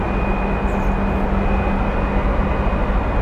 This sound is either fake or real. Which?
real